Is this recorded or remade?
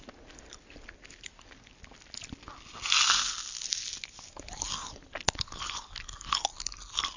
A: recorded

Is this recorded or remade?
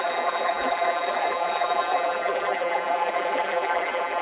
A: remade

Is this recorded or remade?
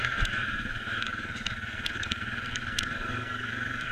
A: remade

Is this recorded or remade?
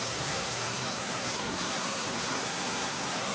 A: remade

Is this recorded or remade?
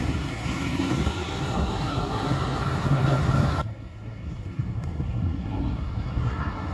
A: remade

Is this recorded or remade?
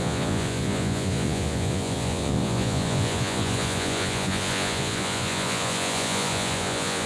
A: remade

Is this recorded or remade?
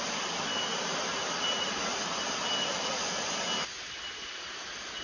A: recorded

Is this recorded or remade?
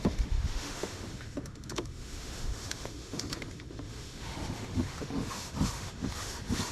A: remade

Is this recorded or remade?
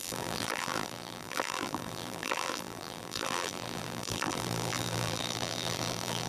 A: remade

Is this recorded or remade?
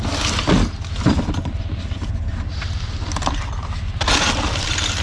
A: recorded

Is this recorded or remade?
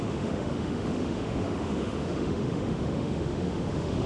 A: remade